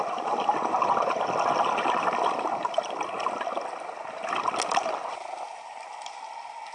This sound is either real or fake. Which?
real